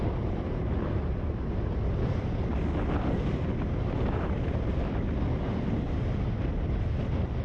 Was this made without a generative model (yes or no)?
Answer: yes